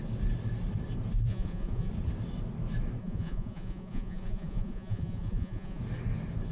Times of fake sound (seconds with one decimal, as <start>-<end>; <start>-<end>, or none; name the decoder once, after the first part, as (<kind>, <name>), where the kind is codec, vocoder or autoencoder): 1.3-1.9 (vocoder, Vocos); 3.0-5.8